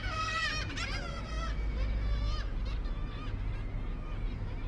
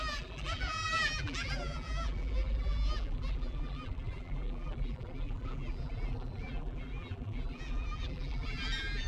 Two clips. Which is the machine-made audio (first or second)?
second